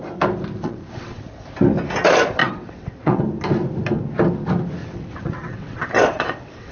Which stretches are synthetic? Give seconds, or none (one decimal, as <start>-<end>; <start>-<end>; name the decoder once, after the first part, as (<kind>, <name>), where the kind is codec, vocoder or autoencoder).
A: 0.6-1.2 (vocoder, WaveNeXt); 2.4-3.2; 4.8-6.7